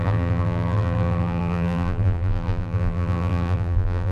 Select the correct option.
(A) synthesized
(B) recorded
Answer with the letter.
A